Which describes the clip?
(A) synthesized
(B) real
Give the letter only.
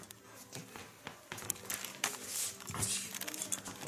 B